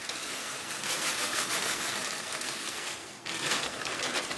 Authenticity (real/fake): fake